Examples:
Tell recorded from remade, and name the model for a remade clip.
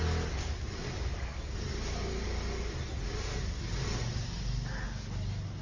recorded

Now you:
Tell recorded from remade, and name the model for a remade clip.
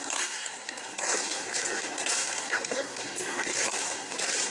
remade, codec, SNAC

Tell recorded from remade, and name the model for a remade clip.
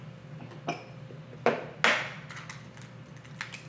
recorded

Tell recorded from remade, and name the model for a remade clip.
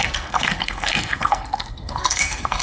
remade, codec, SNAC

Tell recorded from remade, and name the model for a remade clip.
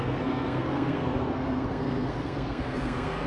remade, codec, SNAC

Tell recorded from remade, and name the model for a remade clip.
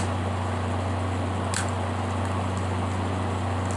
recorded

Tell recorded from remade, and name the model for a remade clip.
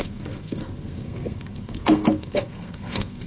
remade, codec, SNAC